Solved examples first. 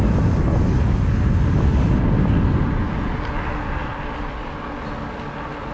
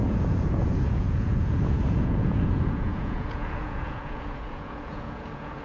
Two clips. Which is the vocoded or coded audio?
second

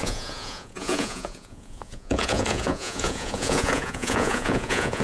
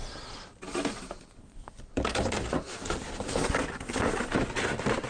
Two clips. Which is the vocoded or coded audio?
first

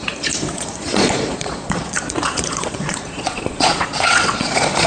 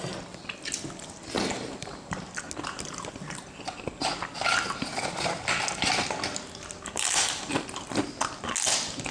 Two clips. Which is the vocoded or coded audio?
first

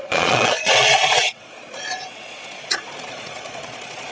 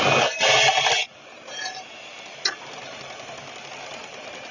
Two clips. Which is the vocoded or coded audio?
first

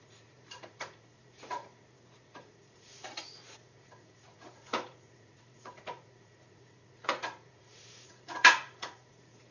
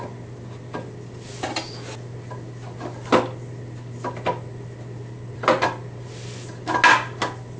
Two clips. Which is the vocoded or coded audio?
first